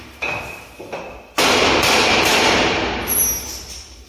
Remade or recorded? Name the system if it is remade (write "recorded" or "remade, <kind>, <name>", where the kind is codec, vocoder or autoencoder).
recorded